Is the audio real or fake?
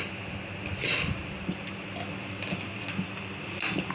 real